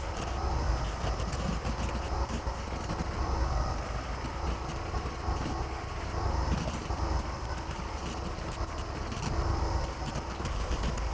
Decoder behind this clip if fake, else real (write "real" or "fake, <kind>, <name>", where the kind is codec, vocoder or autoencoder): fake, vocoder, BigVGAN v2